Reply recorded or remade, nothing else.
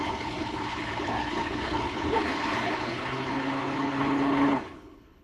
remade